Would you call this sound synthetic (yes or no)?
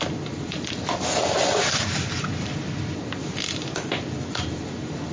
no